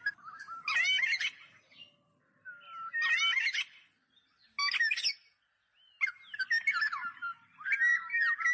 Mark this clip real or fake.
real